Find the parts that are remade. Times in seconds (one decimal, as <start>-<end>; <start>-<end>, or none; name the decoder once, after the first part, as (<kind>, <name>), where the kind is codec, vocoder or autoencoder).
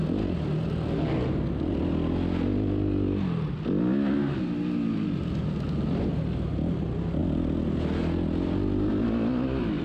none